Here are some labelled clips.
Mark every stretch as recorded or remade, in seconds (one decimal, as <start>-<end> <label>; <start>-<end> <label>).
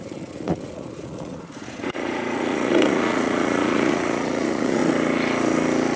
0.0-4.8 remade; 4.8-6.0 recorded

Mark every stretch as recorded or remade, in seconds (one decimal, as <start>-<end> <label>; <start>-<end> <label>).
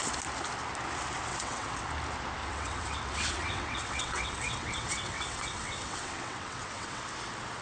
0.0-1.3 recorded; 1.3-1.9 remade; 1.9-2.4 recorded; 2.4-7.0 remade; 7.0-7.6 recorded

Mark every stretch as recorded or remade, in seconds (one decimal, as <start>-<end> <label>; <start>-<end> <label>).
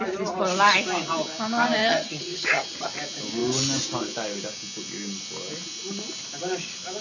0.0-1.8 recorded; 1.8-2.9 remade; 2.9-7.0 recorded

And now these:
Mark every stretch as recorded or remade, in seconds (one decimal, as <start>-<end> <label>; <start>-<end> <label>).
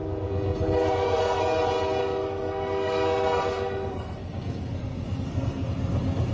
0.0-1.4 remade; 1.4-2.0 recorded; 2.0-5.7 remade; 5.7-6.3 recorded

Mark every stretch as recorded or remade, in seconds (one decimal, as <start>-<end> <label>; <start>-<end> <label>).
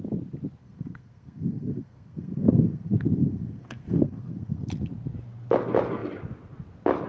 0.0-0.6 recorded; 0.6-4.7 remade; 4.7-7.1 recorded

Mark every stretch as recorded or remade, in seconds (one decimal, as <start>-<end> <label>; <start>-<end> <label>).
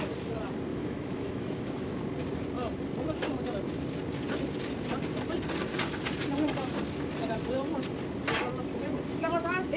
0.0-0.7 recorded; 0.7-1.9 remade; 1.9-9.8 recorded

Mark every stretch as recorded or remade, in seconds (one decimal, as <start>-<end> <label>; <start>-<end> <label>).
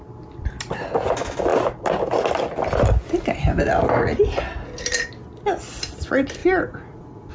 0.0-6.4 recorded; 6.4-7.3 remade